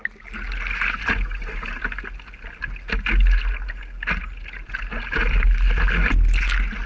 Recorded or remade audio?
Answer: recorded